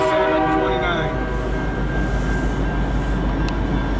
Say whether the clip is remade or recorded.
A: recorded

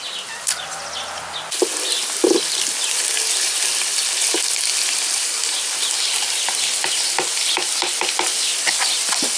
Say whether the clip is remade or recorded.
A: recorded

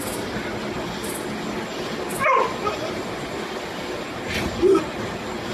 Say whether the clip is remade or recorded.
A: recorded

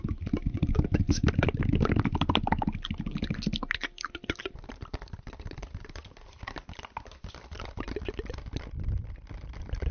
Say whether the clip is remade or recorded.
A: recorded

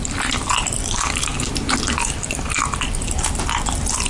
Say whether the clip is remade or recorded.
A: recorded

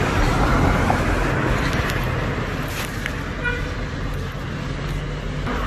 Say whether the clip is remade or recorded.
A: recorded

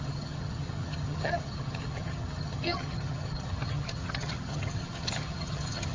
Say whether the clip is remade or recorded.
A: remade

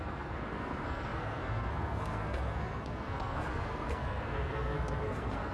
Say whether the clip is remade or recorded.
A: remade